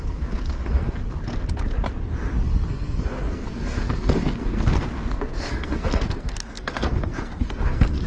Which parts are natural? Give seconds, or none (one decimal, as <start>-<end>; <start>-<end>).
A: 1.0-2.7